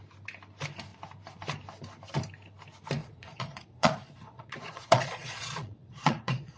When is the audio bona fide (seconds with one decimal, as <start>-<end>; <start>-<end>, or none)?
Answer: 0.0-3.0